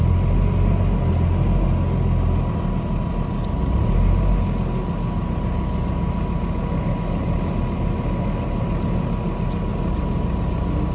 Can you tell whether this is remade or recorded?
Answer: recorded